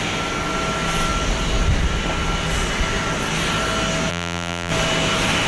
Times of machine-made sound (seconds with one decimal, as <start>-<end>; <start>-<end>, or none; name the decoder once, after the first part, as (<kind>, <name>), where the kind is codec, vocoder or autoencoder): 4.1-4.7 (vocoder, BigVGAN v2)